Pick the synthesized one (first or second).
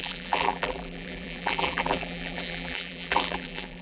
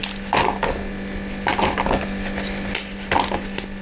first